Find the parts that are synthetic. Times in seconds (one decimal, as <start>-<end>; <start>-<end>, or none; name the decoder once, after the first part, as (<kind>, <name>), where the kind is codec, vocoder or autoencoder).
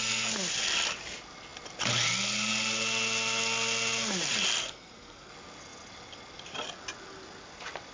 4.6-5.3 (codec, SNAC)